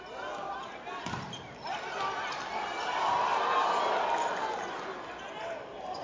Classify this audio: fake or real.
real